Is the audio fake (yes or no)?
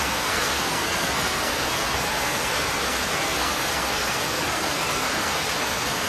yes